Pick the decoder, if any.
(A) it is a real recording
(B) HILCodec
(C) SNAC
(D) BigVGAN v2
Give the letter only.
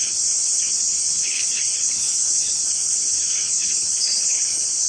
B